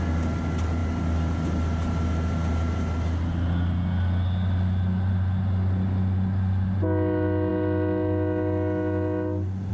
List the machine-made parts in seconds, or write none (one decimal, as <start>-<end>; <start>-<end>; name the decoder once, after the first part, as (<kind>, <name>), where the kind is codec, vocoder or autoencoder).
none